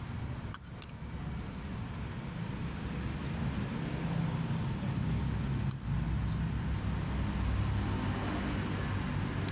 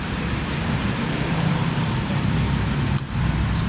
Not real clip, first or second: second